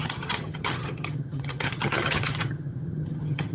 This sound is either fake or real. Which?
fake